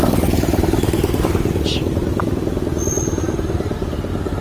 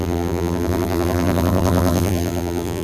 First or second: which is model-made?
second